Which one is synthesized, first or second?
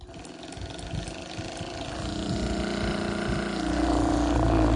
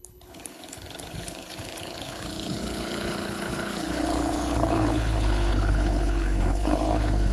second